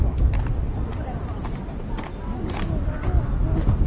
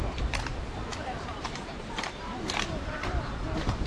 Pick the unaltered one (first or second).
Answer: first